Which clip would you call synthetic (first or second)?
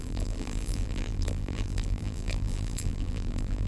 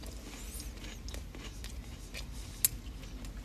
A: first